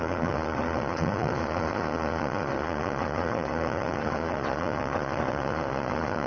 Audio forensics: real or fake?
fake